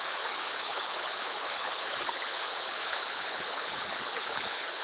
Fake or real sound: fake